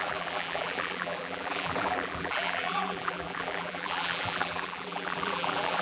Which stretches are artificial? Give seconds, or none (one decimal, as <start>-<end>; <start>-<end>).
0.0-5.8